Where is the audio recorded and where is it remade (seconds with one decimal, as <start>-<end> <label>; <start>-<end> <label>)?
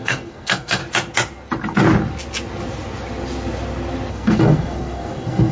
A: 0.0-0.8 remade; 0.8-4.1 recorded; 4.1-5.5 remade